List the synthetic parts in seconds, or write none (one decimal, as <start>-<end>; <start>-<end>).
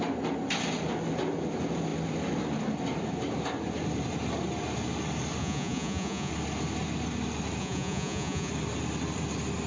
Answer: 5.4-6.3; 7.6-8.5